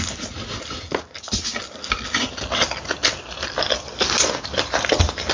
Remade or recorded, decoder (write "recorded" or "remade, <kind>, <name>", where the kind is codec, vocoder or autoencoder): recorded